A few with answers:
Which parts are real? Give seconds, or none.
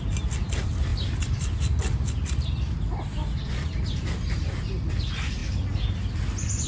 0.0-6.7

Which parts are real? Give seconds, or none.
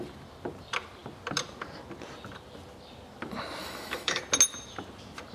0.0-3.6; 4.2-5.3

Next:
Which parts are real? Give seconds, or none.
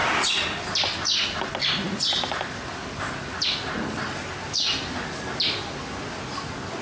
0.0-6.8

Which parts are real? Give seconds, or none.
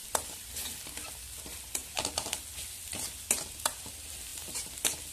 0.0-5.1